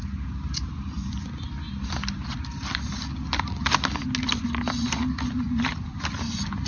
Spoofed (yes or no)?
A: no